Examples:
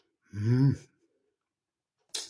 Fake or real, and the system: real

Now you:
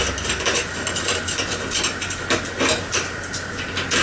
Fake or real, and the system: real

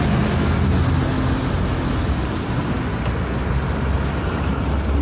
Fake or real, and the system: real